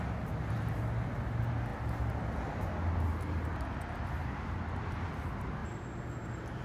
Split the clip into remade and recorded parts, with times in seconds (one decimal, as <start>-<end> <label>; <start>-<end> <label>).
0.0-5.6 recorded; 5.6-6.6 remade